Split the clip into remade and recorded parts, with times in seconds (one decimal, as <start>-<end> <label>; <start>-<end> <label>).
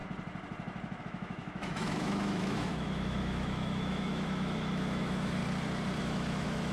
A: 0.0-1.0 recorded; 1.0-5.4 remade; 5.4-6.0 recorded; 6.0-6.7 remade